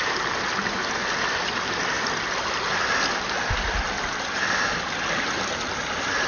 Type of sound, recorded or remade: recorded